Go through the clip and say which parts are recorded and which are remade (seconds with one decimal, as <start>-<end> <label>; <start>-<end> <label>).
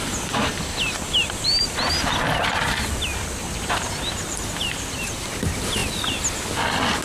0.0-0.5 recorded; 0.5-1.8 remade; 1.8-3.4 recorded; 3.4-5.2 remade; 5.2-7.0 recorded